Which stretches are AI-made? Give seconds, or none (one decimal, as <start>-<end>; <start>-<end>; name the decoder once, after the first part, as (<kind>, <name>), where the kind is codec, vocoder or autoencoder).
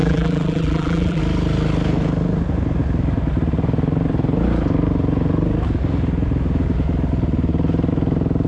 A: 0.0-1.2 (vocoder, BigVGAN v2)